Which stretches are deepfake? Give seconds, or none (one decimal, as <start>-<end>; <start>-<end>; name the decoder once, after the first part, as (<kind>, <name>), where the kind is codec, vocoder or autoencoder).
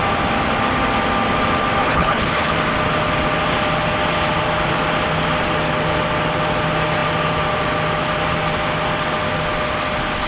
1.8-2.5 (codec, HILCodec)